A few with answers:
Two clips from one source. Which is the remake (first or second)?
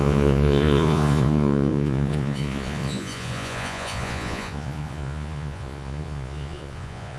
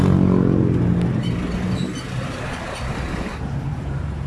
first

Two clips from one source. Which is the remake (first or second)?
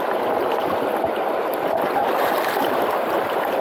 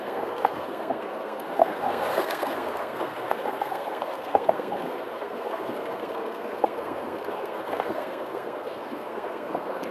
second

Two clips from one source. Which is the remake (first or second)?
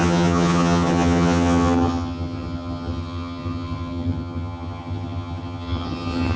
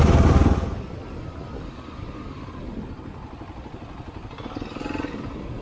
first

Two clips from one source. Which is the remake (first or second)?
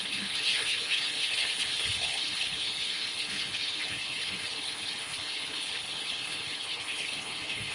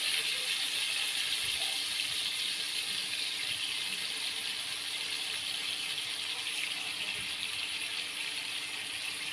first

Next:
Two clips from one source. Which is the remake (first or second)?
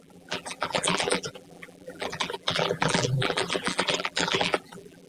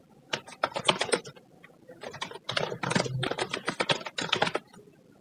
first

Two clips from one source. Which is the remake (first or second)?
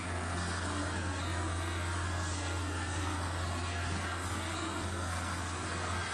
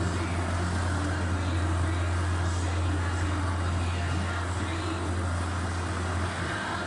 first